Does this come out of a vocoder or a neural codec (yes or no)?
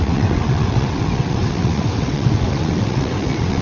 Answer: yes